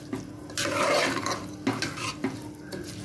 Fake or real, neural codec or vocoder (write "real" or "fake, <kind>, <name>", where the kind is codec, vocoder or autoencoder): real